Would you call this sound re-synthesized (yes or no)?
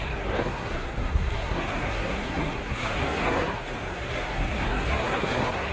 yes